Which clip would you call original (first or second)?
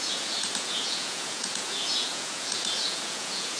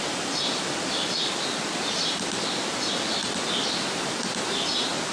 second